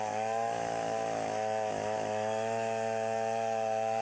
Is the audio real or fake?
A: fake